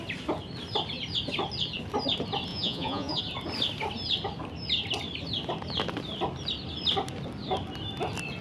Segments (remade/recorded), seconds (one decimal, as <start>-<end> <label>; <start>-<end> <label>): 0.0-2.5 recorded; 2.5-3.2 remade; 3.2-8.4 recorded